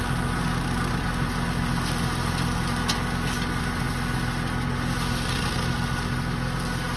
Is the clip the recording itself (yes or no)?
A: yes